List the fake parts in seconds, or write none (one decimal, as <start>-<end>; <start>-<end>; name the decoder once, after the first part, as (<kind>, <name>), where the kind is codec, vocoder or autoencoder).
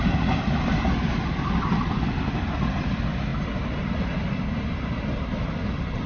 none